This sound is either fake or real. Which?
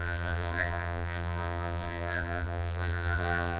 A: fake